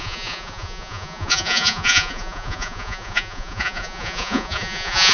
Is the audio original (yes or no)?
no